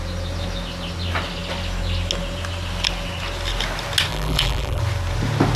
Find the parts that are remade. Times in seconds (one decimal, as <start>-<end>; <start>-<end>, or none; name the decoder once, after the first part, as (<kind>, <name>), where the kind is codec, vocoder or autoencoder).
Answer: 4.1-4.8 (vocoder, BigVGAN v2)

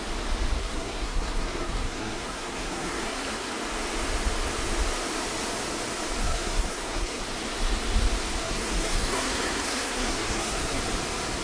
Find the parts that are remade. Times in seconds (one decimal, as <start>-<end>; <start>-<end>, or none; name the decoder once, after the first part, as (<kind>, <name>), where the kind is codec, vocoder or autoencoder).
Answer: 0.6-3.5 (codec, SNAC); 6.2-7.2; 8.4-10.8

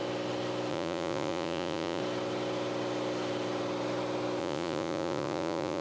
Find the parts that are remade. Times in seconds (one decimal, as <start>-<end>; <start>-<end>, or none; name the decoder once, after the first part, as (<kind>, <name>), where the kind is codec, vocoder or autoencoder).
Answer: 0.7-2.0 (vocoder, Vocos); 4.4-5.8

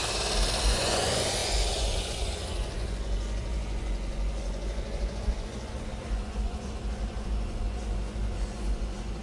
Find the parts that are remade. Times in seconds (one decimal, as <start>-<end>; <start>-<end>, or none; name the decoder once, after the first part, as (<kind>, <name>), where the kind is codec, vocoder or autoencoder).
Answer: 0.6-9.2 (vocoder, Vocos)

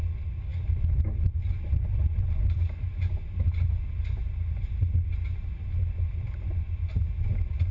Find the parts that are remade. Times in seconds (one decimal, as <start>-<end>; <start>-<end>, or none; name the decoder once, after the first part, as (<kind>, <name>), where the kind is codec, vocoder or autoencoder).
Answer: none